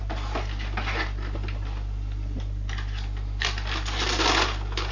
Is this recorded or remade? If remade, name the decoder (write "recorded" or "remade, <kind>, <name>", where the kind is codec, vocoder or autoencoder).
recorded